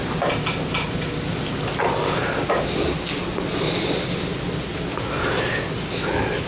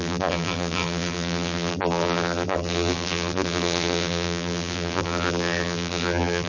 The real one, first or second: first